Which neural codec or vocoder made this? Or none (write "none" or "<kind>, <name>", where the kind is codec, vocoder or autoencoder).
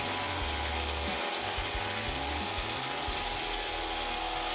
none